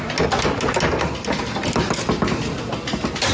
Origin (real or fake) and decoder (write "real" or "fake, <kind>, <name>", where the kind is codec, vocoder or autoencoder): real